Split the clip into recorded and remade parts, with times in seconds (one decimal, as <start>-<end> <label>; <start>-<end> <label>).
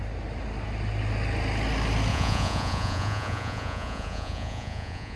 0.0-2.1 recorded; 2.1-5.2 remade